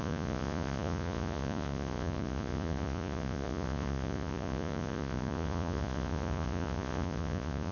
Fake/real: fake